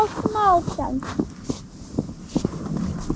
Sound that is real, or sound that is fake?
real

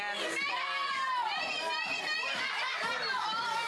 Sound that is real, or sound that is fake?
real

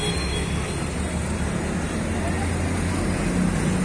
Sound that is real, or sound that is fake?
real